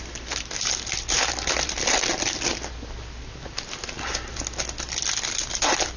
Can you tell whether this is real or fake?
real